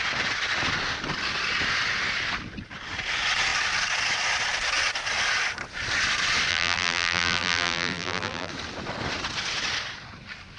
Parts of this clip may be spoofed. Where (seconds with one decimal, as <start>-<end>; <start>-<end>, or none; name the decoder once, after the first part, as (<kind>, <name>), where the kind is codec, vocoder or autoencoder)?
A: 6.5-8.5 (vocoder, BigVGAN v2)